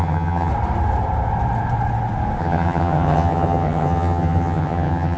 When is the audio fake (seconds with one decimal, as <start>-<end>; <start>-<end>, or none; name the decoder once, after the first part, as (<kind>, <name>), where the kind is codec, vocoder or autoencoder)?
0.0-0.5 (vocoder, HiFi-GAN); 2.4-5.2